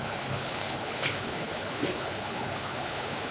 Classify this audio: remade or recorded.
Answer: remade